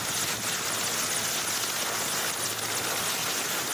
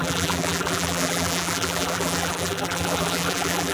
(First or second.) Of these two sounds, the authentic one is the first